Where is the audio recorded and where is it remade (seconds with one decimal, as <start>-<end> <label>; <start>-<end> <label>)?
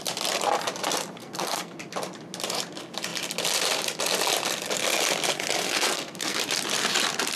0.0-1.2 recorded; 1.2-1.8 remade; 1.8-5.6 recorded; 5.6-6.4 remade; 6.4-7.4 recorded